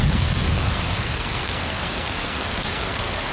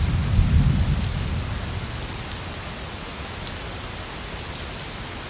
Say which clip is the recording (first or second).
second